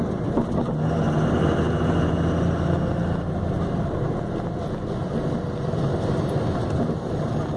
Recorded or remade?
recorded